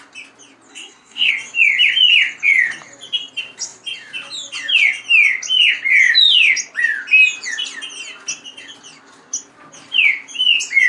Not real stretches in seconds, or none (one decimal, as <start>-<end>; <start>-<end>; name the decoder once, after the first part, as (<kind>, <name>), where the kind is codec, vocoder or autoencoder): 0.7-1.3 (codec, SNAC)

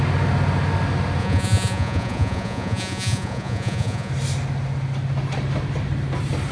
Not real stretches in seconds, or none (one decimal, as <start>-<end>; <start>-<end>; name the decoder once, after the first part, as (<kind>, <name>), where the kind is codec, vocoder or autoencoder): 1.2-4.1 (vocoder, Vocos)

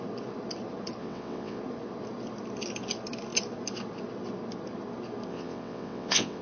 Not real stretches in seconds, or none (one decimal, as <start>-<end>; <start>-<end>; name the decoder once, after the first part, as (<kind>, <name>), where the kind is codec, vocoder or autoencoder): 1.0-1.6 (vocoder, WaveNeXt); 5.3-6.4

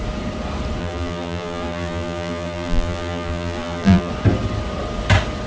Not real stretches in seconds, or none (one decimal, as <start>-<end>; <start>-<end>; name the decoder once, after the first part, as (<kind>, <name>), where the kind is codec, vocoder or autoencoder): 0.8-4.1 (vocoder, BigVGAN v2)